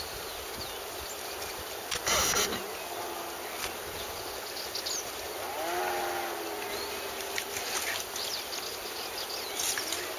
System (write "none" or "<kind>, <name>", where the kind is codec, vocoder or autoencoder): none